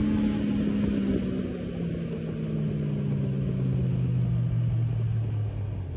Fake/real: real